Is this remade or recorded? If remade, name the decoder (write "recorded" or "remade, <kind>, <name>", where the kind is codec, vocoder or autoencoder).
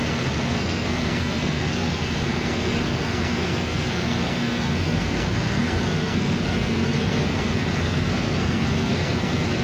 remade, codec, SNAC